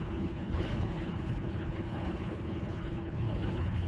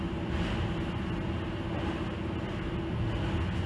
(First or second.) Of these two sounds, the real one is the second